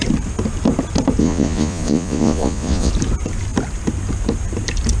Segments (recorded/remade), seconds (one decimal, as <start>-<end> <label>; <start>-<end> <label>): 0.0-1.2 recorded; 1.2-2.9 remade; 2.9-5.0 recorded